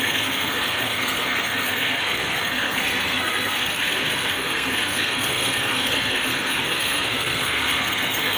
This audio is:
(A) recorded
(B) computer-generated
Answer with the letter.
B